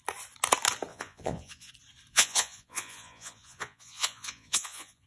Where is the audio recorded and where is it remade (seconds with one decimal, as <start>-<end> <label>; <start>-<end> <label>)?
0.0-0.9 recorded; 0.9-1.7 remade; 1.7-2.1 recorded; 2.1-5.1 remade